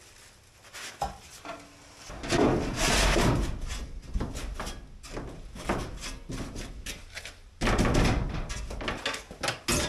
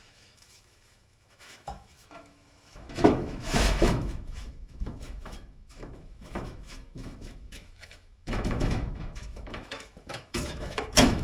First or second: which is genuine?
first